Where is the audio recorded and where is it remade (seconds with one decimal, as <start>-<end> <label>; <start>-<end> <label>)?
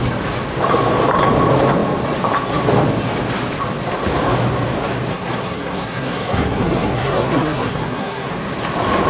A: 0.0-5.1 recorded; 5.1-8.3 remade; 8.3-9.1 recorded